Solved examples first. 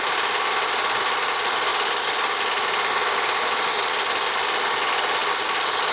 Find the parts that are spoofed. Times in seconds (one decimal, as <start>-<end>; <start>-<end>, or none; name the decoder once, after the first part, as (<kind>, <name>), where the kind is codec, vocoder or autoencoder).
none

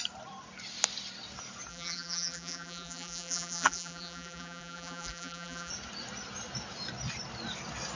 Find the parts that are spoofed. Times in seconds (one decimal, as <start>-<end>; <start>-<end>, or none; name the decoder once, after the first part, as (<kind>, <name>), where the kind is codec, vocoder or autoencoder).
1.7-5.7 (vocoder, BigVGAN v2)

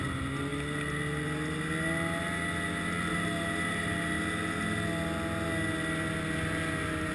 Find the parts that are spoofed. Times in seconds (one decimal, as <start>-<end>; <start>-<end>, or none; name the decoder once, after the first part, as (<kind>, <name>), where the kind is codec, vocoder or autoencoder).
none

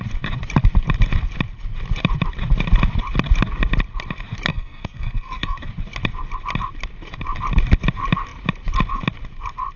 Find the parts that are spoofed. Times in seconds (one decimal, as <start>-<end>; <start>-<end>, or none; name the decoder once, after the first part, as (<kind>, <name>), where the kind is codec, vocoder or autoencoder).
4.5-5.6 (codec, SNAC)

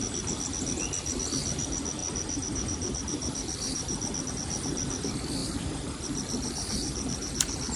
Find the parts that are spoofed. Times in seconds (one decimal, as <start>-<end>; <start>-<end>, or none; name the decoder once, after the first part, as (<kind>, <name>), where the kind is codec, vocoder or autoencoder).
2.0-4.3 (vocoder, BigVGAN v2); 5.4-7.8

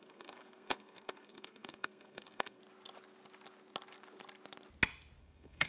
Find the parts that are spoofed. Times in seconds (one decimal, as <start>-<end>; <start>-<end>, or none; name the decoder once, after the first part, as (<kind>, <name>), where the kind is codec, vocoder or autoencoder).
0.0-2.6 (codec, SNAC); 5.2-5.7